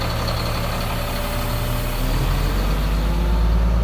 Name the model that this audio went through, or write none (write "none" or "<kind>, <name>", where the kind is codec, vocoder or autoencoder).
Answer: none